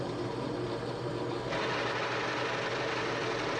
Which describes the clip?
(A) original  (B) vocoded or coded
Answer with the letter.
A